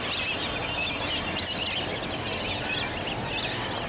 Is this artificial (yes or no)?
no